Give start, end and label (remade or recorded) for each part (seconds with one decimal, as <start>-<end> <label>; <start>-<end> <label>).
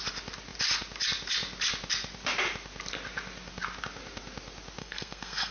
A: 0.0-4.8 recorded; 4.8-5.5 remade